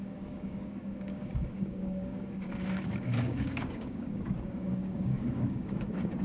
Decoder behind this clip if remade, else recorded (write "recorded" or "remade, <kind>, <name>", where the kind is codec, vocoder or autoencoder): remade, codec, DAC